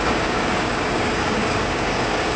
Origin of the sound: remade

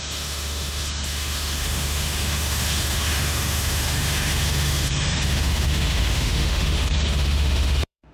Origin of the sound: remade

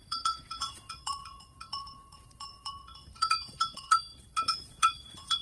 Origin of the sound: remade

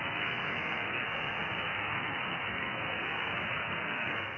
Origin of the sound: remade